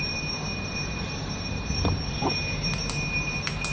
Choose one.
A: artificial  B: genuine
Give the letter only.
B